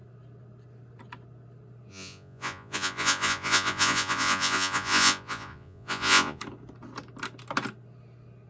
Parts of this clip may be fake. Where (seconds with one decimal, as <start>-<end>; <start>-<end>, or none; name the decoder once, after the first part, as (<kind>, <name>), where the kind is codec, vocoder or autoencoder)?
1.9-6.4 (vocoder, Vocos)